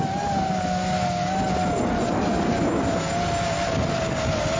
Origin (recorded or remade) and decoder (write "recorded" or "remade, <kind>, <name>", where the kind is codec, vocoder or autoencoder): recorded